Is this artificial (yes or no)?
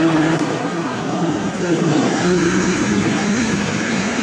yes